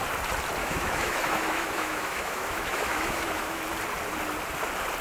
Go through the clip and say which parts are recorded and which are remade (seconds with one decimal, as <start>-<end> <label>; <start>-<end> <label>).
0.0-0.6 recorded; 0.6-3.6 remade; 3.6-5.0 recorded